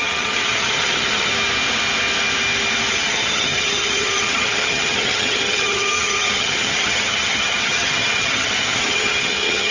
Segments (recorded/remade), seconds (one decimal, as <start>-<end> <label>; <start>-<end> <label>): 0.0-1.3 remade; 1.3-2.9 recorded; 2.9-9.7 remade